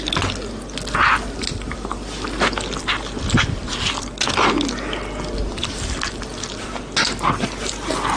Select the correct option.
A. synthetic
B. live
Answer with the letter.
B